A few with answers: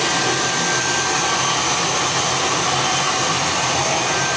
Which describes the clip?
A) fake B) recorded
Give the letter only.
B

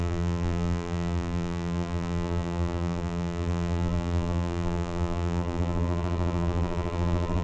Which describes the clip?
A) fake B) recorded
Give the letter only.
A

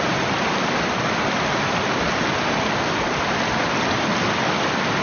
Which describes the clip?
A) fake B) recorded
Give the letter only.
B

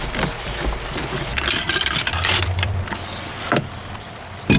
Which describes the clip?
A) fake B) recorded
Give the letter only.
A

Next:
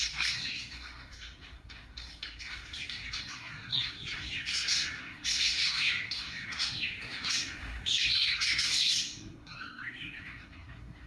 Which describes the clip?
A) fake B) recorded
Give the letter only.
A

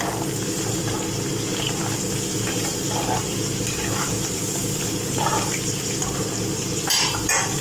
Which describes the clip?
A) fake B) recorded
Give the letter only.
A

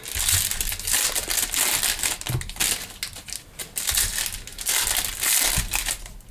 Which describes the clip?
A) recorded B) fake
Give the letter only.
A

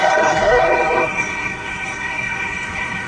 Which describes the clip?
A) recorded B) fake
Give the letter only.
B